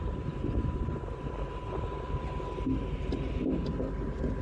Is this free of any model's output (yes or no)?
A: yes